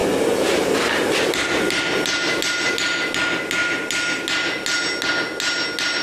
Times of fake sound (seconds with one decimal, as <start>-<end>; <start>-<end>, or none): none